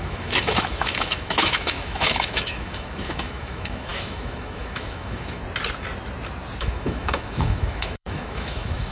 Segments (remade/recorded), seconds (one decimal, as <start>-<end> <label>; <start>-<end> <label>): 0.0-5.4 remade; 5.4-6.6 recorded; 6.6-8.9 remade